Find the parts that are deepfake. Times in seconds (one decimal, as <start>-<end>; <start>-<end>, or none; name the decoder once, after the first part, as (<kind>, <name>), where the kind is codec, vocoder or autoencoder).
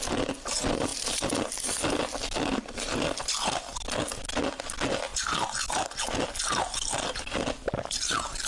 none